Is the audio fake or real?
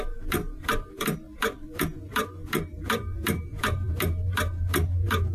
fake